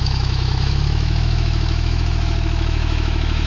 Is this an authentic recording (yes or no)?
no